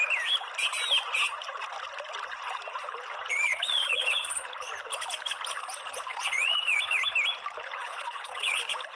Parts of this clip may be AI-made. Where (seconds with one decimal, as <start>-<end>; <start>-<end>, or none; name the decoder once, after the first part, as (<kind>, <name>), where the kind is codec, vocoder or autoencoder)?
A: 3.3-4.3 (vocoder, Vocos); 6.1-7.0; 7.8-8.6